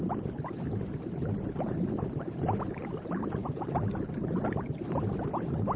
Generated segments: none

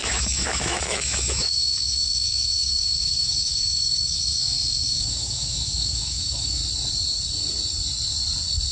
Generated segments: 0.0-6.6 (autoencoder, DAC-VAE)

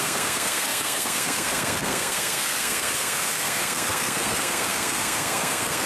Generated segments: 0.0-5.9 (codec, SNAC)

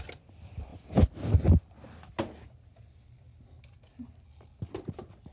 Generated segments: none

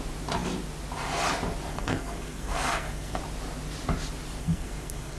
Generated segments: 1.7-3.2 (codec, SNAC); 4.4-5.2

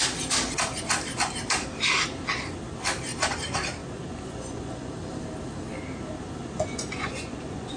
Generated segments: 3.8-4.9 (vocoder, Vocos); 6.4-7.8